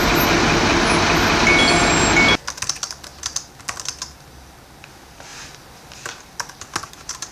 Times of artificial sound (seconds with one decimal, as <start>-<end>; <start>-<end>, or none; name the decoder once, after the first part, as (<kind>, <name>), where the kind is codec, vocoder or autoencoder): none